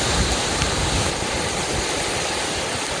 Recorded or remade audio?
recorded